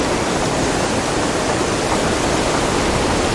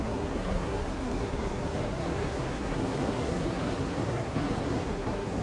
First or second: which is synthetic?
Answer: second